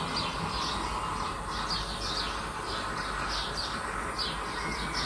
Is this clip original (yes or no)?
yes